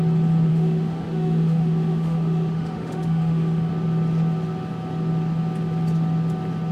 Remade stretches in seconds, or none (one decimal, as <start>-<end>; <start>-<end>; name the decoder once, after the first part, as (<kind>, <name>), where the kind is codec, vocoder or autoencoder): 0.5-3.7 (autoencoder, DAC-VAE)

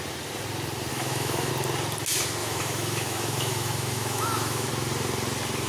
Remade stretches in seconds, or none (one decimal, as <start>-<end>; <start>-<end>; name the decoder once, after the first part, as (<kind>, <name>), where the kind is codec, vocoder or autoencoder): 0.9-1.5 (autoencoder, DAC-VAE); 2.4-4.7

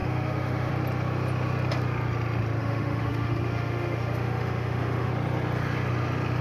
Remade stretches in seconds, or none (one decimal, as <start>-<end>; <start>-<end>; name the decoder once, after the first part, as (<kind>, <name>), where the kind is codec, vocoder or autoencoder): 0.0-0.7 (autoencoder, DAC-VAE); 2.6-5.1

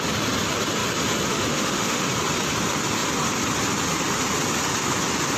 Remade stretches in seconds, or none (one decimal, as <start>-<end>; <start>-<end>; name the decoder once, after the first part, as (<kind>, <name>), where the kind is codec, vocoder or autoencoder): 1.3-2.1 (autoencoder, DAC-VAE)

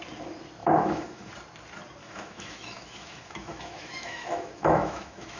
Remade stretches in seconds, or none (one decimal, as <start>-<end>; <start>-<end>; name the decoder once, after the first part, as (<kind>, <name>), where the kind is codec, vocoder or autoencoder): 0.6-1.3 (autoencoder, DAC-VAE); 2.0-5.4

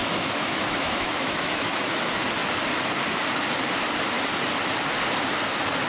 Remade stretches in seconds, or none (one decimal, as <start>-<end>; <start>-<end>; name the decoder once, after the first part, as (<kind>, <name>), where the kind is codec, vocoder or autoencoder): 0.0-1.7 (autoencoder, DAC-VAE)

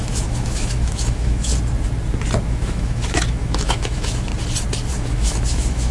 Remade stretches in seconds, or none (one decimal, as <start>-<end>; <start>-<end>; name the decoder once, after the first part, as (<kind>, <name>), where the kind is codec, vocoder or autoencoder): 0.0-1.5 (autoencoder, DAC-VAE); 2.5-4.3; 4.9-5.9

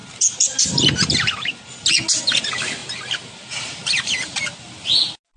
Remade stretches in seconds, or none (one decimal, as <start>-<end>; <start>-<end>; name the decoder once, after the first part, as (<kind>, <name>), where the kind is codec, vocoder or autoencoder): none